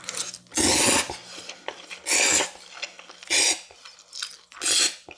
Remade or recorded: recorded